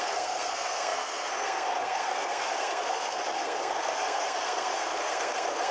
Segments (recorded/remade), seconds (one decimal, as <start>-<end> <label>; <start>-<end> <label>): 0.0-5.7 remade